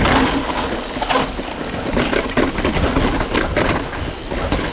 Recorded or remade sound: recorded